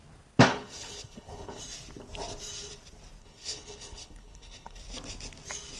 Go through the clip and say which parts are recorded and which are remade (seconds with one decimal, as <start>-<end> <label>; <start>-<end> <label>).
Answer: 0.0-0.5 recorded; 0.5-1.6 remade; 1.6-3.2 recorded; 3.2-4.8 remade; 4.8-5.8 recorded